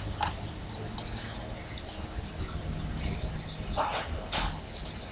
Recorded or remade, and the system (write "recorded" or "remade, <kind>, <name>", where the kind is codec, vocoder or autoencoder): recorded